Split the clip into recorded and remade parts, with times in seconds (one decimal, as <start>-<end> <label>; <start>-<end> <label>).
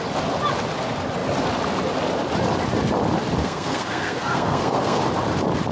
0.0-3.4 recorded; 3.4-5.0 remade; 5.0-5.7 recorded